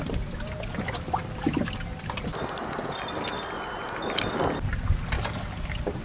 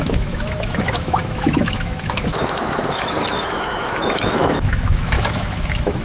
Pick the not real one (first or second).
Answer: second